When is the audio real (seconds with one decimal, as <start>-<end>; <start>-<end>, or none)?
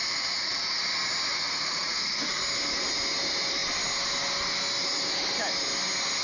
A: 0.8-1.3; 2.4-6.2